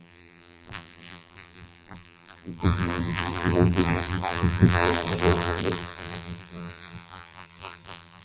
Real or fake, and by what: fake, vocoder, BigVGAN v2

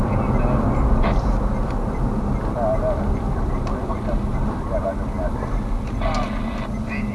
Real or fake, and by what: real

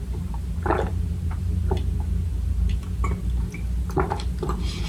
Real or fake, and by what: fake, vocoder, BigVGAN v2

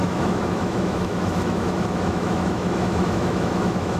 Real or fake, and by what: fake, autoencoder, DAC-VAE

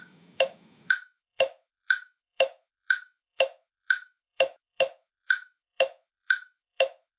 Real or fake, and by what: fake, autoencoder, DAC-VAE